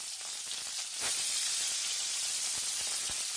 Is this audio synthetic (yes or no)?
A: no